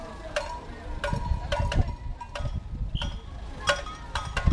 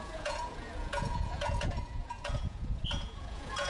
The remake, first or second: second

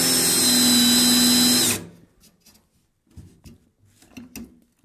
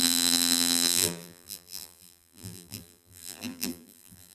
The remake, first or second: second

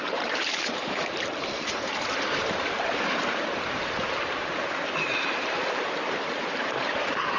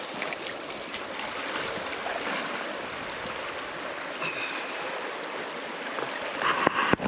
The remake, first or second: first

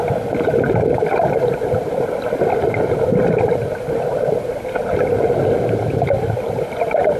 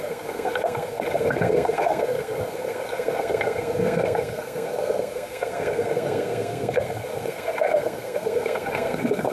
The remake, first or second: second